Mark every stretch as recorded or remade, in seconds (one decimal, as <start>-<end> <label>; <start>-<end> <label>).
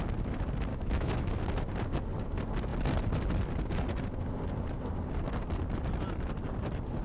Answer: 0.0-0.7 recorded; 0.7-1.4 remade; 1.4-7.0 recorded